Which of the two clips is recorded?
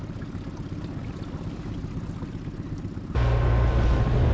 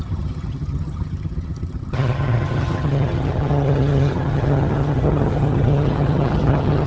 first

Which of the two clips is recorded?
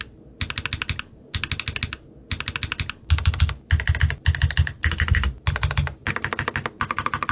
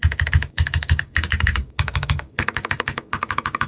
first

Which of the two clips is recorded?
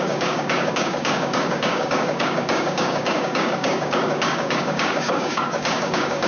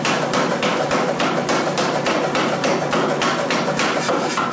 second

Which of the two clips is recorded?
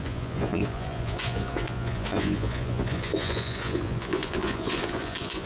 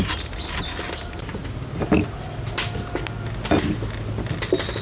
second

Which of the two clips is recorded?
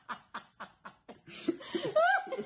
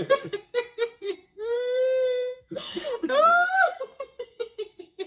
first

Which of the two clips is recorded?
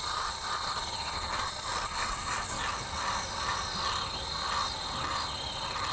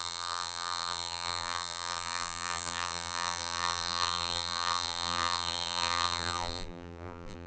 first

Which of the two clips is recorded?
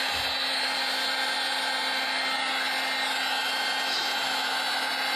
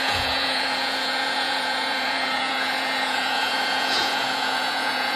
first